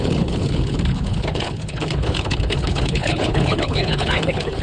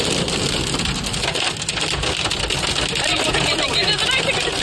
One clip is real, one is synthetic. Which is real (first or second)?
second